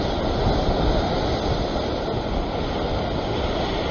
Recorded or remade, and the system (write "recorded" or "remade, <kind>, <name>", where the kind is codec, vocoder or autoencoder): recorded